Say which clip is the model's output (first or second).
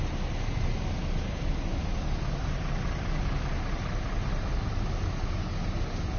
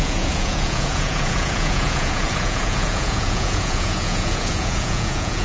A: second